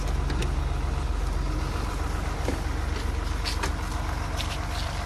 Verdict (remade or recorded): recorded